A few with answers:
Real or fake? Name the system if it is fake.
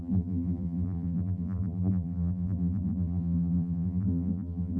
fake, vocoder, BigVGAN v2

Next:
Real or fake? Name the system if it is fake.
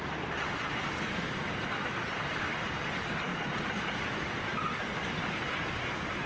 fake, vocoder, BigVGAN v2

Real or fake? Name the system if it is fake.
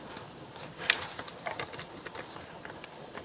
real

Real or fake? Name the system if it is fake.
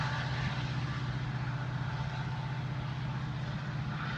real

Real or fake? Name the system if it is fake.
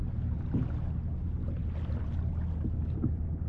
real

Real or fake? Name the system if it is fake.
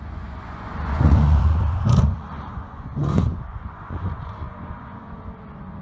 fake, vocoder, Vocos